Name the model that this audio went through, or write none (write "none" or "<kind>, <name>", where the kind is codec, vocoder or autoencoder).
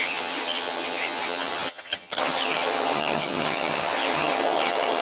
vocoder, HiFi-GAN